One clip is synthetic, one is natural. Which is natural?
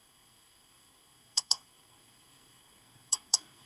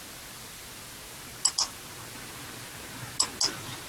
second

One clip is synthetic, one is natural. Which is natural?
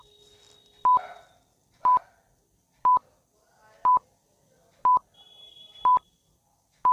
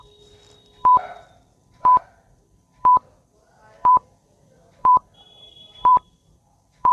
first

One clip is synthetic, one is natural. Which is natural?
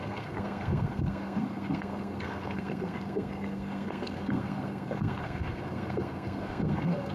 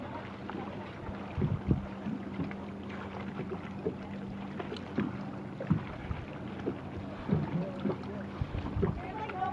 second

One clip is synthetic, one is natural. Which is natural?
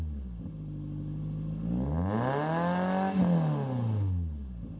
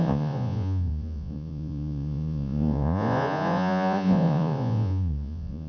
first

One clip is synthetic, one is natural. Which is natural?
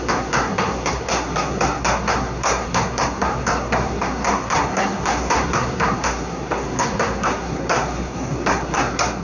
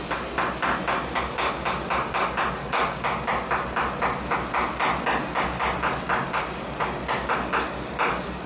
second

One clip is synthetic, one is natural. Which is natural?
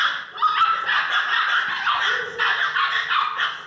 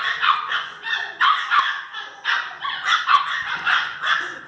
first